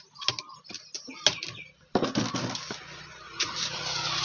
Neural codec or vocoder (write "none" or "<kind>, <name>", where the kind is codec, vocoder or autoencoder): none